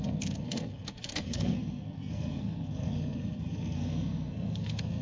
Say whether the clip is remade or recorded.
remade